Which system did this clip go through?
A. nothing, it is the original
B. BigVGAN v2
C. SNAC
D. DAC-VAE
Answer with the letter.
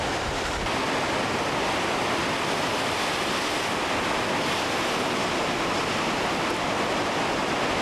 A